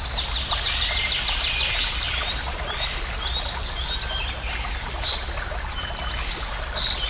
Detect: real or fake real